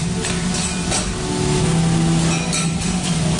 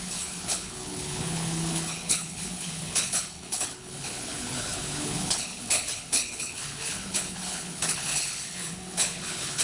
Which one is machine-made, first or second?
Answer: second